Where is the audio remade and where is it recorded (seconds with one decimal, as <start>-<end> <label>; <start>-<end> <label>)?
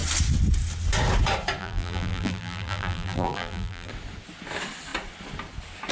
0.0-1.6 recorded; 1.6-3.9 remade; 3.9-5.9 recorded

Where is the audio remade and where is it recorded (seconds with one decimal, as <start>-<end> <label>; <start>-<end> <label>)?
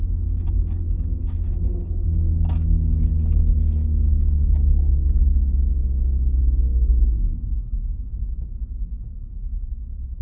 0.0-10.2 recorded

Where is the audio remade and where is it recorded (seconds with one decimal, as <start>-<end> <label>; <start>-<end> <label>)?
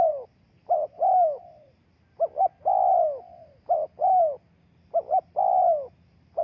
0.0-6.4 recorded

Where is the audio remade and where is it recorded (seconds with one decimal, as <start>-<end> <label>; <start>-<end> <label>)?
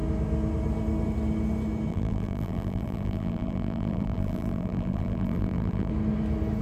0.0-1.9 recorded; 1.9-5.9 remade; 5.9-6.6 recorded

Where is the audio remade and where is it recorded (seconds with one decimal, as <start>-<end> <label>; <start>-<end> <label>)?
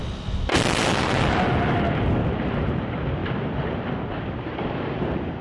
0.0-2.2 recorded; 2.2-2.8 remade; 2.8-3.2 recorded; 3.2-5.4 remade